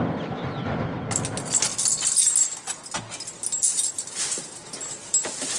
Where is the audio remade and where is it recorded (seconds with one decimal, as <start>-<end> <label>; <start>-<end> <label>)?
0.0-5.6 recorded